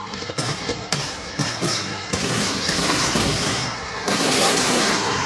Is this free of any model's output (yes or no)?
no